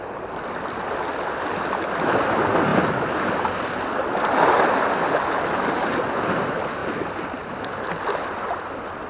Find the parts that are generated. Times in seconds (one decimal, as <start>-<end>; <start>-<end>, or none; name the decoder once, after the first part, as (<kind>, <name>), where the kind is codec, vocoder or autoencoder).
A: none